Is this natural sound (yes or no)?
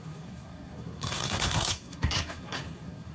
no